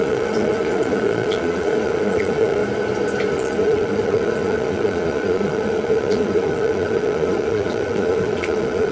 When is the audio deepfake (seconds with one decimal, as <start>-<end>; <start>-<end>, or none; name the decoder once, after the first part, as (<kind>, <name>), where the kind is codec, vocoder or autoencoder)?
0.0-2.6 (vocoder, Vocos); 3.3-8.9